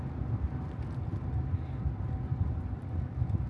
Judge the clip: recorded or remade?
recorded